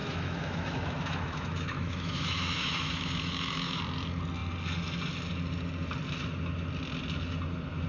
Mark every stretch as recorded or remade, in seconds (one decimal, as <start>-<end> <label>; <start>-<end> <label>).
0.0-3.8 remade; 3.8-7.9 recorded